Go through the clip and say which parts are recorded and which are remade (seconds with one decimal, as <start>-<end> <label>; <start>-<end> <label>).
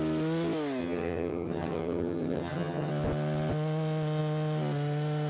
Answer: 0.0-0.8 recorded; 0.8-2.9 remade; 2.9-5.3 recorded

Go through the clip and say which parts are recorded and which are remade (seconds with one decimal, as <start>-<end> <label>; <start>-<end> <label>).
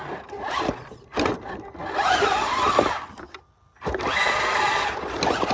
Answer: 0.0-5.5 recorded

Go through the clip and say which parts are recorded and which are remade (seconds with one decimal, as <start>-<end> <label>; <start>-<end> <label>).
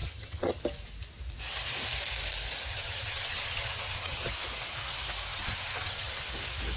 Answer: 0.0-0.6 remade; 0.6-2.7 recorded; 2.7-4.3 remade; 4.3-5.3 recorded; 5.3-6.1 remade; 6.1-6.8 recorded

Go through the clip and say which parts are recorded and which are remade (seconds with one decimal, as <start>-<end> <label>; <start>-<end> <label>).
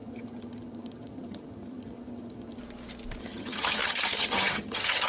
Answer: 0.0-2.6 remade; 2.6-3.2 recorded; 3.2-5.1 remade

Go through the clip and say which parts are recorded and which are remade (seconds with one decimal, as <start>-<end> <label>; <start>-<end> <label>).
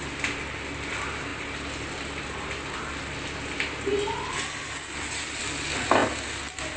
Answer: 0.0-6.8 recorded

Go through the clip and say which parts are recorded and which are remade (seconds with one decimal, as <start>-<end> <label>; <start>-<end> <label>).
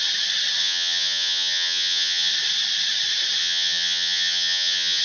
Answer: 0.0-0.6 recorded; 0.6-2.3 remade; 2.3-3.4 recorded; 3.4-5.0 remade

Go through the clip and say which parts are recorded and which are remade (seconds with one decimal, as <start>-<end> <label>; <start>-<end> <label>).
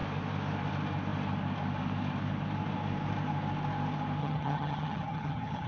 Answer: 0.0-4.2 recorded; 4.2-5.7 remade